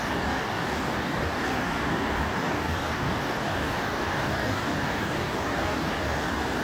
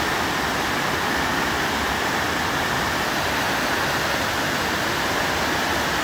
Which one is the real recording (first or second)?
second